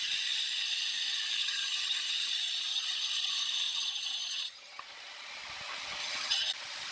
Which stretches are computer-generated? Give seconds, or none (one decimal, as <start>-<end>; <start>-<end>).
1.4-2.3; 2.7-3.3; 3.7-4.8; 6.0-6.5